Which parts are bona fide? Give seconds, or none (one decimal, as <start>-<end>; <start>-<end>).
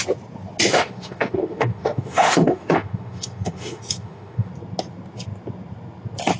0.0-0.7; 4.5-6.4